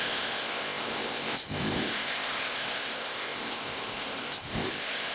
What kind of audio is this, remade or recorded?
remade